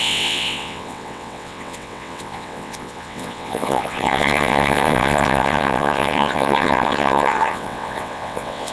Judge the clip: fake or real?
fake